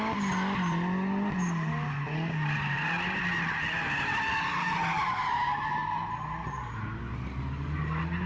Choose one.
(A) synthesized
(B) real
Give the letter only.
B